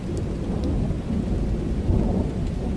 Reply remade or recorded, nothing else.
recorded